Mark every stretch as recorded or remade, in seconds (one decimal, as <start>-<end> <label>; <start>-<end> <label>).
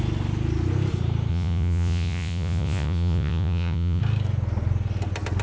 0.0-1.3 recorded; 1.3-4.0 remade; 4.0-5.4 recorded